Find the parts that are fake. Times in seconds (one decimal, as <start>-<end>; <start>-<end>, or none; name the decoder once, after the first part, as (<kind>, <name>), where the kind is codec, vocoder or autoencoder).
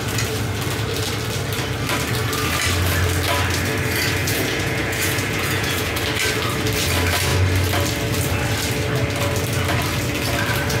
4.2-6.0 (vocoder, Vocos)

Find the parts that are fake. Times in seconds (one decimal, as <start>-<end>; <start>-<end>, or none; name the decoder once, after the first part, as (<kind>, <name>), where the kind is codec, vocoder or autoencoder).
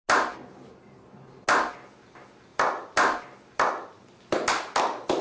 none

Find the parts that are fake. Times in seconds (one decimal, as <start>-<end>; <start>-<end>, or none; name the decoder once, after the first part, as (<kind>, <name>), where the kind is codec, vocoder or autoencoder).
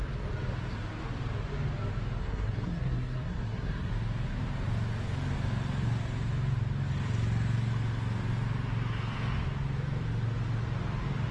2.2-3.9 (codec, SNAC)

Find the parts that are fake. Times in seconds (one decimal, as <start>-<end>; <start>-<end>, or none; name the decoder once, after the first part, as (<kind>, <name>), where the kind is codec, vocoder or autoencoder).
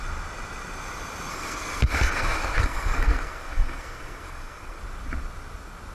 1.3-4.8 (codec, SNAC)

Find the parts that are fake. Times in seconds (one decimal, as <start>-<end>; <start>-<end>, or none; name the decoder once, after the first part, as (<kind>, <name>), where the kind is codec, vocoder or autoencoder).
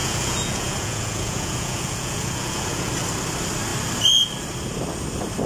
0.0-2.9 (vocoder, Vocos)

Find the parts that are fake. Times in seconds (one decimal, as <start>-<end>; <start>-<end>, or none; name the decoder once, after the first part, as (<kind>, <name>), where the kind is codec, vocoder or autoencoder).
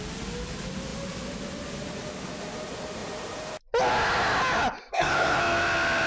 4.9-5.4 (codec, SNAC)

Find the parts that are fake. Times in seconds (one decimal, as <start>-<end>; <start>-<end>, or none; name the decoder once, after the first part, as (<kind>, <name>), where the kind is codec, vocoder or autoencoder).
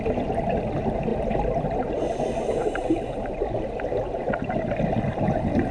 1.1-1.9 (vocoder, BigVGAN v2); 2.6-3.4; 5.1-5.7